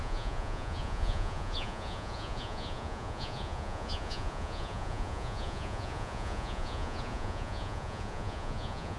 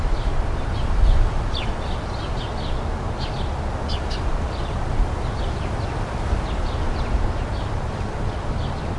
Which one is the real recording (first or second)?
second